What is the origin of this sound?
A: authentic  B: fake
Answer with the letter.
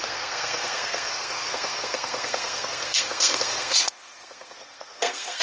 B